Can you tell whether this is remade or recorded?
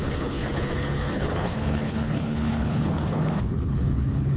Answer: remade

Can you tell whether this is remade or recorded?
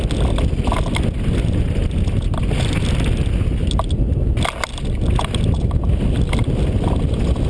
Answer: recorded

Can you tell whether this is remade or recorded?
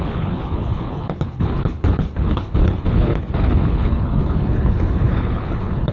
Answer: remade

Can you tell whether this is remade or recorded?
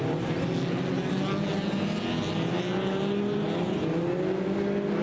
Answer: recorded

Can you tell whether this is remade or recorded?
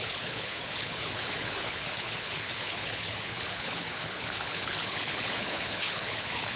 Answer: remade